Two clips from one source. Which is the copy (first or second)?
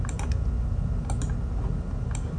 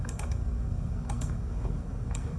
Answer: second